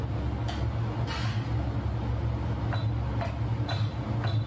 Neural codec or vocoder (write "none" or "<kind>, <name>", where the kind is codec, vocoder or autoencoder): none